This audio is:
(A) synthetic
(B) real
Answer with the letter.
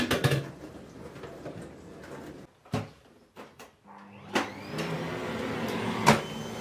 B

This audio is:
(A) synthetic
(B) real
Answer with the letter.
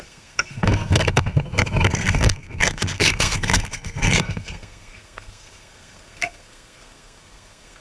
A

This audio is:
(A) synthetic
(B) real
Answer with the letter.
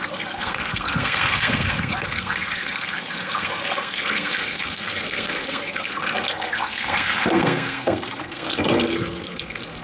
A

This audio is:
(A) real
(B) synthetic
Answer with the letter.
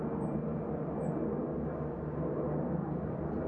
A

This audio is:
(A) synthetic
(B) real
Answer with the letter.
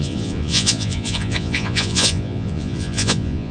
A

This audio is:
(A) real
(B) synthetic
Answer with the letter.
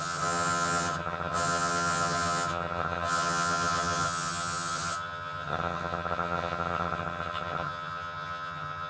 B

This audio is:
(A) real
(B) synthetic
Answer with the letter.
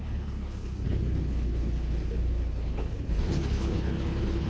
B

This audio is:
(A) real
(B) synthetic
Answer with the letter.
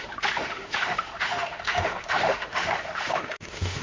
B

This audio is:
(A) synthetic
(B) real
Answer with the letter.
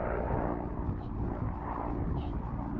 B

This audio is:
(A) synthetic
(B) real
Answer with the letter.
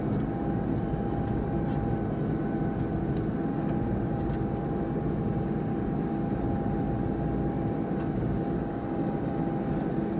B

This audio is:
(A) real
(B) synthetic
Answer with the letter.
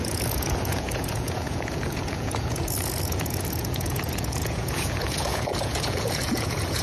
B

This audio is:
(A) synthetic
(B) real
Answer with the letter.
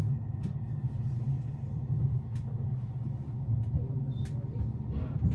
B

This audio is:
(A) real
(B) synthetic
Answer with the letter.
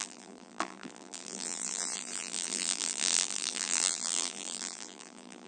B